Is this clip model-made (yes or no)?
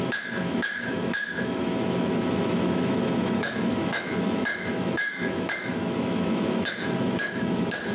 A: yes